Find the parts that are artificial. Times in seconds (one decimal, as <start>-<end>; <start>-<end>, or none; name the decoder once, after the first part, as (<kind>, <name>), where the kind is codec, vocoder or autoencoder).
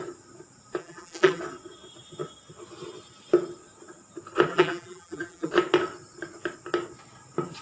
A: 0.8-1.4 (vocoder, BigVGAN v2); 4.5-5.5